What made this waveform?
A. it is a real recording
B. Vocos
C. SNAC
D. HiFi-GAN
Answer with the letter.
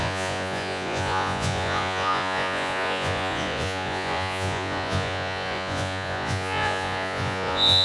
B